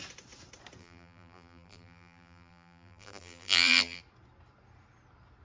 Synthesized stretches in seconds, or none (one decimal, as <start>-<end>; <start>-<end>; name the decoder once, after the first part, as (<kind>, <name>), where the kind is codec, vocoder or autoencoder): 0.8-4.0 (vocoder, BigVGAN v2)